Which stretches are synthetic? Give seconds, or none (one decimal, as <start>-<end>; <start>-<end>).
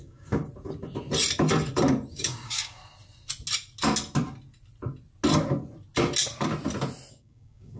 0.0-0.4; 2.1-2.8; 7.1-7.8